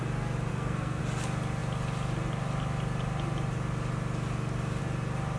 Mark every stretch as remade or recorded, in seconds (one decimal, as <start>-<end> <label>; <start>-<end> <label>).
0.0-0.5 recorded; 0.5-1.0 remade; 1.0-5.4 recorded